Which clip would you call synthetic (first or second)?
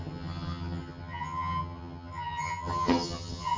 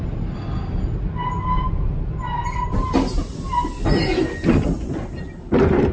first